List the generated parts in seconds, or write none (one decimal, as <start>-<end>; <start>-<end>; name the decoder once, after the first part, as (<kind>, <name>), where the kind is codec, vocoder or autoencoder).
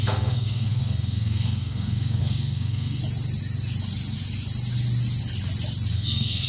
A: 0.0-3.0 (codec, SNAC); 5.9-6.5